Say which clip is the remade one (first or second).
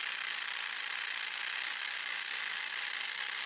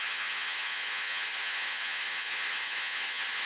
second